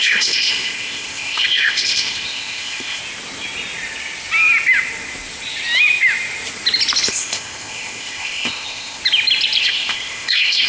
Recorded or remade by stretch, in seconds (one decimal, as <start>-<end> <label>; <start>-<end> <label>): 0.0-3.0 remade; 3.0-7.1 recorded; 7.1-9.0 remade; 9.0-9.6 recorded; 9.6-10.7 remade